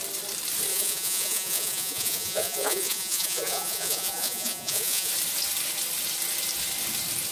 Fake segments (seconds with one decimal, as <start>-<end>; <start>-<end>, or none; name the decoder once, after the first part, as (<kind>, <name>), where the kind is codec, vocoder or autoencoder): 0.7-5.1 (vocoder, Vocos)

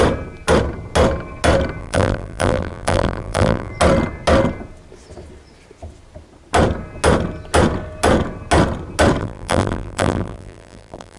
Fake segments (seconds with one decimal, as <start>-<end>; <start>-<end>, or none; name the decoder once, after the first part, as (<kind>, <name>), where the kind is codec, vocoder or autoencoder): 1.8-3.7 (vocoder, BigVGAN v2); 9.2-11.2

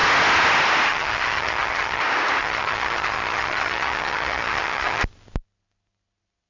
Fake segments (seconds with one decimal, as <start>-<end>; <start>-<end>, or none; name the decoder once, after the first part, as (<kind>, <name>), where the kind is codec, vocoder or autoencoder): 0.9-2.0 (vocoder, HiFi-GAN); 2.4-5.0

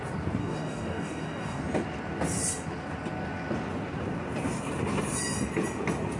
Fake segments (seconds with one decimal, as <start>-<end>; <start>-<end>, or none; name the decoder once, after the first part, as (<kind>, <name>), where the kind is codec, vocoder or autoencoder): 0.4-1.6 (codec, DAC)